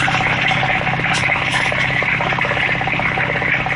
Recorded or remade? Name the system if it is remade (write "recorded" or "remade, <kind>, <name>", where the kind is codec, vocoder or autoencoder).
recorded